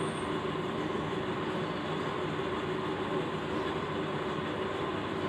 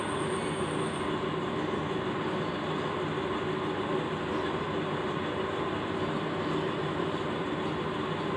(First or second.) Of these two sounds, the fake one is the first